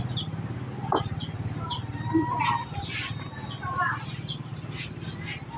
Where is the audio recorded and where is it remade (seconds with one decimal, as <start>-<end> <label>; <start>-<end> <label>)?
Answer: 0.0-5.6 recorded